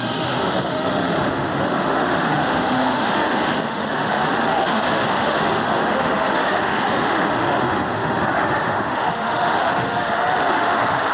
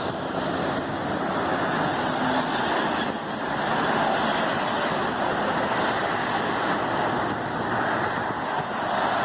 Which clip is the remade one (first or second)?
first